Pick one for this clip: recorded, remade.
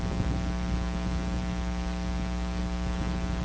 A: recorded